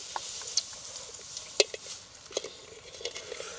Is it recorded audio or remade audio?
recorded